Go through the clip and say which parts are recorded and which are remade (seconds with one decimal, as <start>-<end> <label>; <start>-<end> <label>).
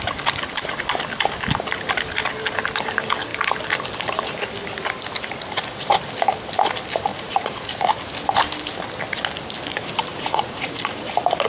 0.0-7.1 recorded; 7.1-7.7 remade; 7.7-10.1 recorded; 10.1-10.7 remade; 10.7-11.5 recorded